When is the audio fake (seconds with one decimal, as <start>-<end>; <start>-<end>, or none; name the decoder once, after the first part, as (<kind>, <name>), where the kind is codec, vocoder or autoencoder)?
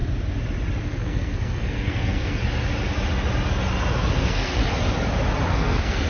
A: 0.8-2.4 (codec, SNAC); 4.0-4.6; 5.5-6.1